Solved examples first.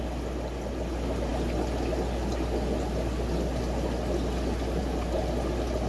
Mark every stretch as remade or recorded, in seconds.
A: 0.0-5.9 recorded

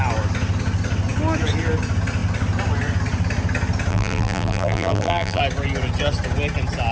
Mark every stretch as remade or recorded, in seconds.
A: 0.0-3.9 recorded; 3.9-5.4 remade; 5.4-6.9 recorded

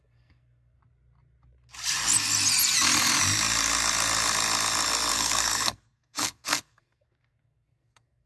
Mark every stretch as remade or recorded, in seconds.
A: 0.0-0.8 remade; 0.8-5.1 recorded; 5.1-8.3 remade

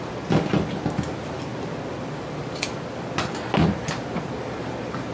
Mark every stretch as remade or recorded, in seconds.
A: 0.0-5.1 recorded

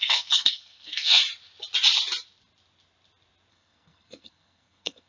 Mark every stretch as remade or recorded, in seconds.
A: 0.0-1.2 remade; 1.2-3.5 recorded; 3.5-5.1 remade

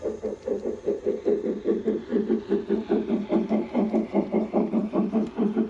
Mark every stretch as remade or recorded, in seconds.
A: 0.0-5.7 remade

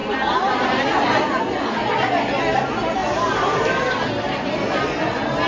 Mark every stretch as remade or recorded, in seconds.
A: 0.0-5.5 recorded